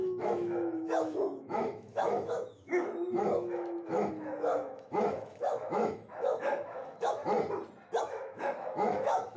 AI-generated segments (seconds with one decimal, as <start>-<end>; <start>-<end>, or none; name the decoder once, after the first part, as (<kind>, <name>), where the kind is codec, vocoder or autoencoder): 0.0-7.2 (autoencoder, DAC-VAE); 8.0-9.4